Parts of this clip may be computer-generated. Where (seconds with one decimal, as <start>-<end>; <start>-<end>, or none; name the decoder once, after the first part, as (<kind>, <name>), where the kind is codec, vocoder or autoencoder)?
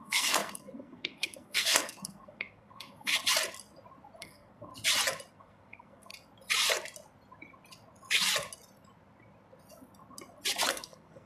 0.0-3.1 (codec, SNAC); 4.2-4.7; 5.3-6.1; 10.7-11.3